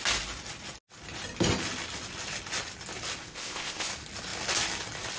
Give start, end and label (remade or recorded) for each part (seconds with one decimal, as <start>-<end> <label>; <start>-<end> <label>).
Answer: 0.0-3.2 recorded; 3.2-3.9 remade; 3.9-5.2 recorded

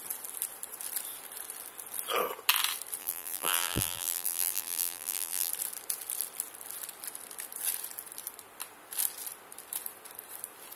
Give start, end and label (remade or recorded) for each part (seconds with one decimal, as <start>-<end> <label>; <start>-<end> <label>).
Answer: 0.0-3.0 recorded; 3.0-5.5 remade; 5.5-10.8 recorded

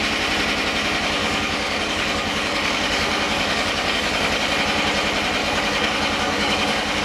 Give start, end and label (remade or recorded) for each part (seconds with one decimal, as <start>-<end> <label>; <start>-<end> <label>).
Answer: 0.0-1.2 recorded; 1.2-4.6 remade; 4.6-5.4 recorded; 5.4-7.0 remade

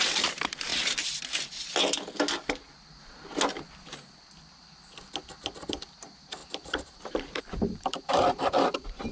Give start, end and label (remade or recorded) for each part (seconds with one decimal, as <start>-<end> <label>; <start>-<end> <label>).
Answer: 0.0-0.7 remade; 0.7-5.9 recorded; 5.9-9.1 remade

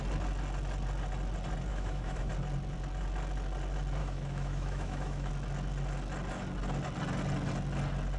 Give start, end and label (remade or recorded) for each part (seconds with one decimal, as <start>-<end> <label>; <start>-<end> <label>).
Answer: 0.0-1.7 recorded; 1.7-2.3 remade; 2.3-4.0 recorded; 4.0-5.3 remade; 5.3-8.2 recorded

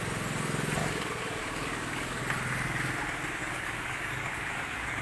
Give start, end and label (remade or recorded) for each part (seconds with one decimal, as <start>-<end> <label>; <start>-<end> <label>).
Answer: 0.0-0.8 recorded; 0.8-2.2 remade; 2.2-3.4 recorded; 3.4-5.0 remade